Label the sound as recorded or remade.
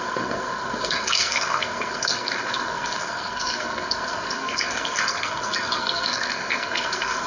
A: remade